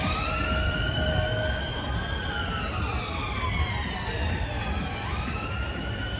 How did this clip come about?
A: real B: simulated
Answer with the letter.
A